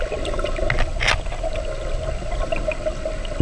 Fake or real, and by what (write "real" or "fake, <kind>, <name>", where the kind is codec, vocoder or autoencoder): real